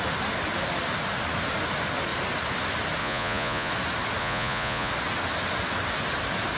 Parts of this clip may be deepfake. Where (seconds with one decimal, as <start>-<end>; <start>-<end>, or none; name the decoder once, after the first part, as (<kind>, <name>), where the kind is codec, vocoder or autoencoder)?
3.0-3.7 (vocoder, Vocos); 4.2-4.9

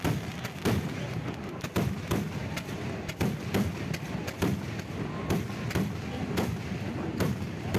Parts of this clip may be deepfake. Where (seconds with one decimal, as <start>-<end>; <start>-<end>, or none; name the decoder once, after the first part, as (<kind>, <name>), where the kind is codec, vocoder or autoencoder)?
none

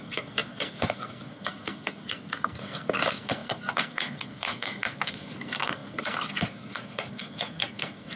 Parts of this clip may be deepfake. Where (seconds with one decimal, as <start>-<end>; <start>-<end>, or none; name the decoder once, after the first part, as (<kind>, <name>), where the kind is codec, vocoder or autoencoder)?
0.0-8.2 (codec, SNAC)

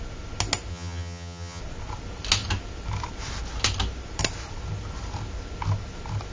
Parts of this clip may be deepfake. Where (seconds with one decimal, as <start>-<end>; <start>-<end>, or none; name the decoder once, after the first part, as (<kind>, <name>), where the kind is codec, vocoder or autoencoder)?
0.7-1.6 (vocoder, HiFi-GAN)